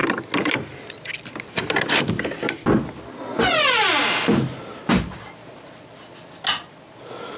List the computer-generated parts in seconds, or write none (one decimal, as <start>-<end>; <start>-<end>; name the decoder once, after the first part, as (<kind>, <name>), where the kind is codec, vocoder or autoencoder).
none